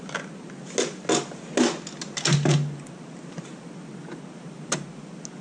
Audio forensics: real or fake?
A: real